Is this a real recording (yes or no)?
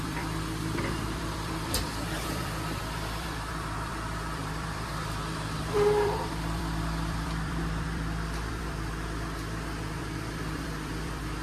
no